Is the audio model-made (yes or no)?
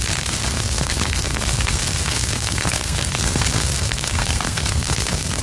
yes